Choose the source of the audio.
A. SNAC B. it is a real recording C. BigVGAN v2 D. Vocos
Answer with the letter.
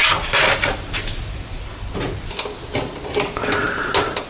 B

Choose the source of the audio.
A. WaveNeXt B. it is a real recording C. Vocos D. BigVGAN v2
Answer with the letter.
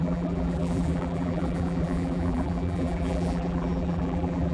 D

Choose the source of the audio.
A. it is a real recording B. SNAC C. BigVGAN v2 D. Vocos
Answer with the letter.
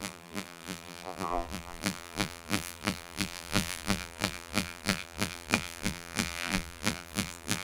C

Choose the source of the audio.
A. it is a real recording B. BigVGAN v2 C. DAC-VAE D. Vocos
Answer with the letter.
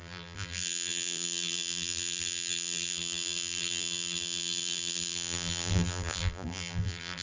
B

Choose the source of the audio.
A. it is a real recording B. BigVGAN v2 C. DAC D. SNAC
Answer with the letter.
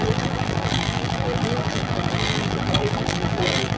B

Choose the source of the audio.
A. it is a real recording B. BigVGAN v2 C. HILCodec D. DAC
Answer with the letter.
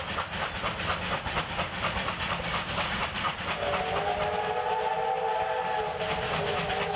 A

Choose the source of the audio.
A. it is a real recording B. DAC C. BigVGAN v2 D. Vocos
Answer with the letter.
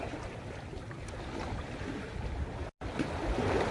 A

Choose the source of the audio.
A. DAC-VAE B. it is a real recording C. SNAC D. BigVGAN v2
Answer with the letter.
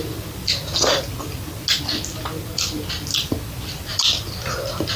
B